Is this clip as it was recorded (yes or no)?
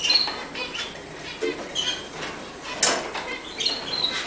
yes